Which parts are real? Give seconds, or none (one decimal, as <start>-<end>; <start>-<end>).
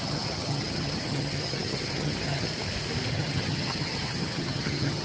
2.5-3.1